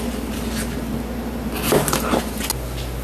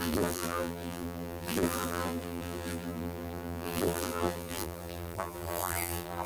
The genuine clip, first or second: first